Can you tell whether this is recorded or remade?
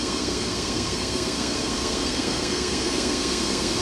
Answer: remade